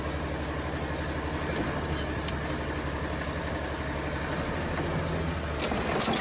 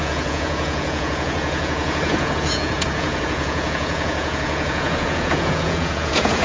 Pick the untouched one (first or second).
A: first